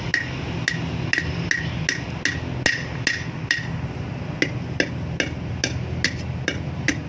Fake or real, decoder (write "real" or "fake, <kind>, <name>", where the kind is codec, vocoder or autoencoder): real